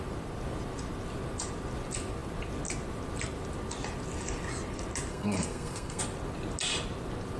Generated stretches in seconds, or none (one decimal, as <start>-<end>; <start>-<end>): 5.1-6.0